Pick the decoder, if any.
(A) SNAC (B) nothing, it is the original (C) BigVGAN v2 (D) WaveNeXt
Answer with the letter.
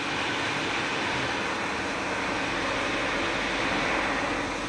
B